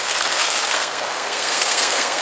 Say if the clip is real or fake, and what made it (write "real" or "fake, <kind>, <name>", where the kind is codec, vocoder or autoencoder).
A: fake, codec, SNAC